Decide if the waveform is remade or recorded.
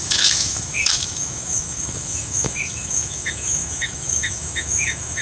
remade